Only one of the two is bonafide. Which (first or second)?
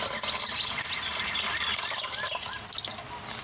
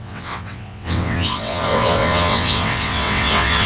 first